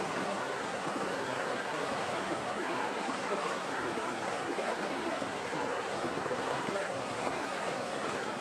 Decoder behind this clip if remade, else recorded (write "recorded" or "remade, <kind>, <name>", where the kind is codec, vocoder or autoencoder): remade, codec, SNAC